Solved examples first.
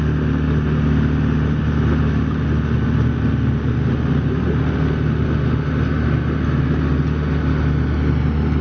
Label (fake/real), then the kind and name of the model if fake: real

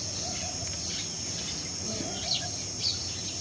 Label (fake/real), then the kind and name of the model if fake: real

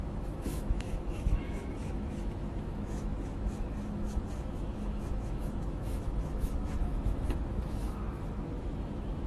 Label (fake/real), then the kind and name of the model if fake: fake, autoencoder, DAC-VAE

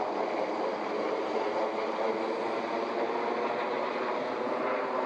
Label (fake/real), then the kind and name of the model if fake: real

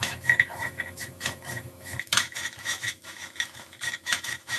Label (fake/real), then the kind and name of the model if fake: fake, autoencoder, DAC-VAE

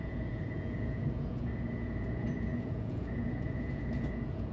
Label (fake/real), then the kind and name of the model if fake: fake, vocoder, Vocos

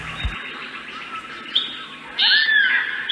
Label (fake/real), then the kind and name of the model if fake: real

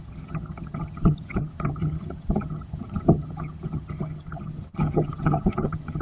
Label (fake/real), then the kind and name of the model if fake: fake, vocoder, HiFi-GAN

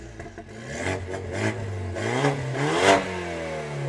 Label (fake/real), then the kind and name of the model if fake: real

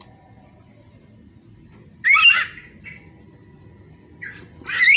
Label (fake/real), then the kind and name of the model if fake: real